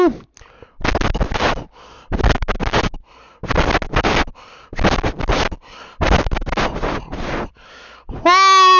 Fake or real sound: real